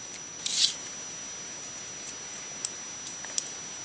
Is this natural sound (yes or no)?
yes